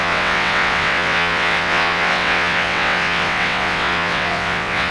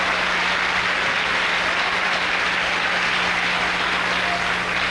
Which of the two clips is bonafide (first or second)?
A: second